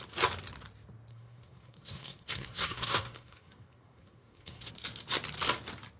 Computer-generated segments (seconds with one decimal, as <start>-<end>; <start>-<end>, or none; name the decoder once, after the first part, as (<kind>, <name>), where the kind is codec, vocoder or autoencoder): 1.1-4.7 (codec, SNAC)